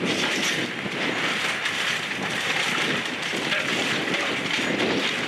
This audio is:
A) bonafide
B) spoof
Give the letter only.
A